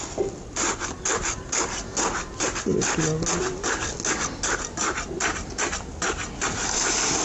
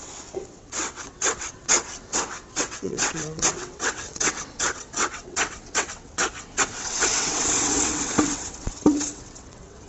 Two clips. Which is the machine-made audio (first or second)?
second